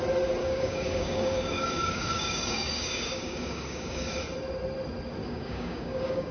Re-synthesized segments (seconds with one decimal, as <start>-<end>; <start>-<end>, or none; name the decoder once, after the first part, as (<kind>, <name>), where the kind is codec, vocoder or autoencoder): 0.4-4.2 (codec, DAC); 5.2-6.3